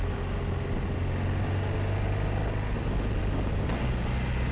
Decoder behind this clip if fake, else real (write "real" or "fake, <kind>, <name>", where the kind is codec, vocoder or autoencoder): real